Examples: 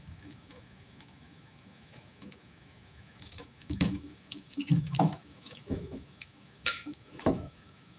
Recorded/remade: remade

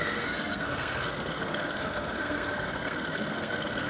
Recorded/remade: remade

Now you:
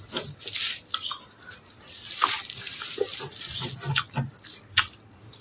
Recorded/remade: recorded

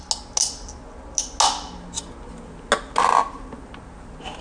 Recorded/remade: recorded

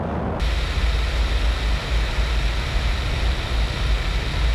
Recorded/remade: recorded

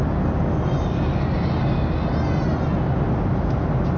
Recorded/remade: recorded